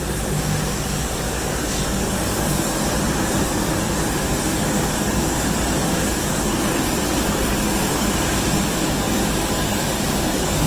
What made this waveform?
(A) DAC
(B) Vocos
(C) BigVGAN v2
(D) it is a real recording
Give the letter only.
A